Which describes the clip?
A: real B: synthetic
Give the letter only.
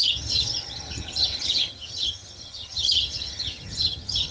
B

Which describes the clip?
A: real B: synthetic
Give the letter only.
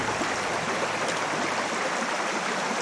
A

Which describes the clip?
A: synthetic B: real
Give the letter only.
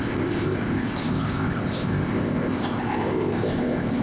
A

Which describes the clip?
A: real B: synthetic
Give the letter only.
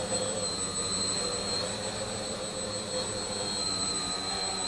A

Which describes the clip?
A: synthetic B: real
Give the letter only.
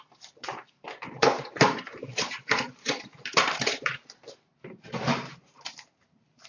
A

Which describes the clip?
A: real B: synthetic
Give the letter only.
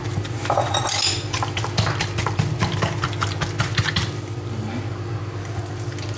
A